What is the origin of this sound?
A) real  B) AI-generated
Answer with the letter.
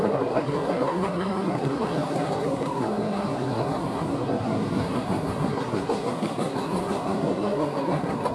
B